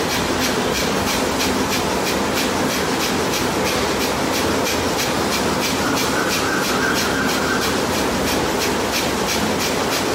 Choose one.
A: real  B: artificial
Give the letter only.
A